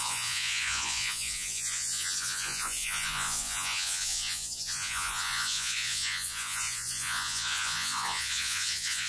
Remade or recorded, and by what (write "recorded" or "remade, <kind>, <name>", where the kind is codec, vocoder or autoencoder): remade, vocoder, Vocos